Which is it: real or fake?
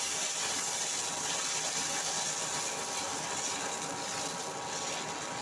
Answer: real